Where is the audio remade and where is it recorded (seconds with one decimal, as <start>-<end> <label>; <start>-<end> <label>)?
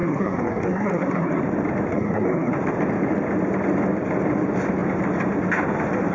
0.0-1.4 remade; 1.4-1.9 recorded; 1.9-2.5 remade; 2.5-6.1 recorded